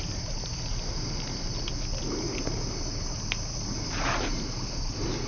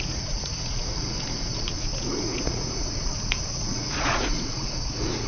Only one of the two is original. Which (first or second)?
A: first